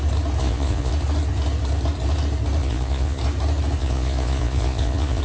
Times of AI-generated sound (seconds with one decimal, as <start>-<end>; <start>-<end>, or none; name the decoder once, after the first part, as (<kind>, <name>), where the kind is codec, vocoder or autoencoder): 0.4-0.9 (vocoder, Vocos); 2.6-3.2; 3.8-5.2